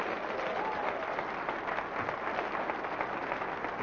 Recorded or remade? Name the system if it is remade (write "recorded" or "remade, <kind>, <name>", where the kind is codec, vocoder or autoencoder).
recorded